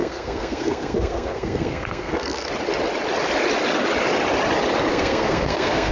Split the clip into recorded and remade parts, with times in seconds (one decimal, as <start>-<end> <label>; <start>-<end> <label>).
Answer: 0.0-2.5 remade; 2.5-4.9 recorded; 4.9-5.9 remade